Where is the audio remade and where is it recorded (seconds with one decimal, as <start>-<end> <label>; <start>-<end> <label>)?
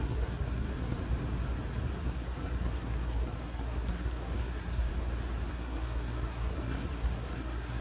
0.0-1.0 remade; 1.0-2.0 recorded; 2.0-4.9 remade; 4.9-5.5 recorded; 5.5-7.8 remade